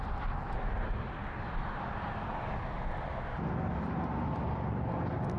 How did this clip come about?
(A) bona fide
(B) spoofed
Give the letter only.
A